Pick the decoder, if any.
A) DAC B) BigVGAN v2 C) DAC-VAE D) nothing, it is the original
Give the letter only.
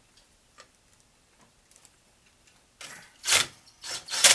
D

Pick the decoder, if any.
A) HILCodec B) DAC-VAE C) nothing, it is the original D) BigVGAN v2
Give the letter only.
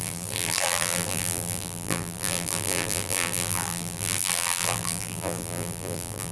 D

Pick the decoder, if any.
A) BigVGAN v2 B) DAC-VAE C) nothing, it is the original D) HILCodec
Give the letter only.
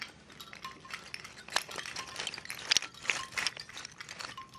C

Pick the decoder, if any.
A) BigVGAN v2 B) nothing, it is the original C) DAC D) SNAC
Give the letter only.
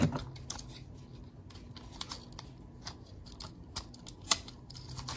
B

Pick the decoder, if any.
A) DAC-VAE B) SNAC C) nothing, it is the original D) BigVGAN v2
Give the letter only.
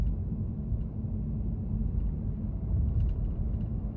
C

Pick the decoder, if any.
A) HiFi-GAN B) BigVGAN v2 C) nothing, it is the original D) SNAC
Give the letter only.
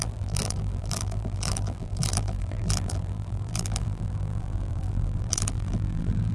B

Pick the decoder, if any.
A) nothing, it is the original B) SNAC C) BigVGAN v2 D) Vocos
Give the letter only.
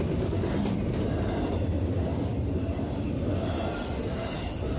A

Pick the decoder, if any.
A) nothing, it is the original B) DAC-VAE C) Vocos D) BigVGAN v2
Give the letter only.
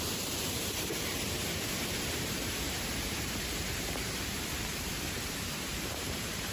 D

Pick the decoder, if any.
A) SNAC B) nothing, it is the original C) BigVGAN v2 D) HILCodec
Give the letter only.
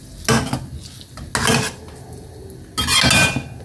B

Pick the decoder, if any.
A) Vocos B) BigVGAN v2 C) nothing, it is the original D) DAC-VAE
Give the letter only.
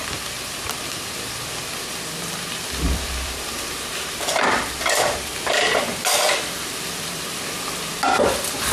B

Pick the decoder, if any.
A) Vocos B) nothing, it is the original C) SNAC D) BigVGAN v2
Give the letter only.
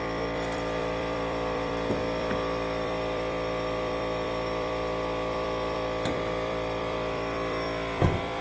D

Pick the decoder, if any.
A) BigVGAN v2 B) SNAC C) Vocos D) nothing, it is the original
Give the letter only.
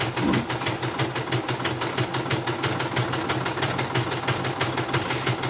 D